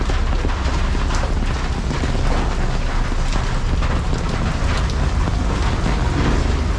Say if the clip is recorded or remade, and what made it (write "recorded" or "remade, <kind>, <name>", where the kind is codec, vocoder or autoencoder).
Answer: recorded